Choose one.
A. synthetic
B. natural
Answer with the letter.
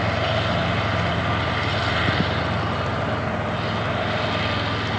B